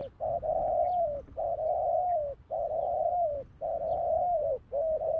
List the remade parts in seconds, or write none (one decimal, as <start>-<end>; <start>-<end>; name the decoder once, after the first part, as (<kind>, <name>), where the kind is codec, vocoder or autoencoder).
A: none